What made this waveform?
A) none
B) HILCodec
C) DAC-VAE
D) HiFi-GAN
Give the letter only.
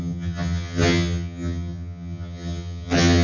D